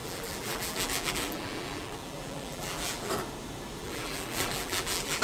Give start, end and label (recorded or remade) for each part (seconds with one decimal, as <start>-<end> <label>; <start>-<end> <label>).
0.0-3.1 remade; 3.1-3.8 recorded; 3.8-5.2 remade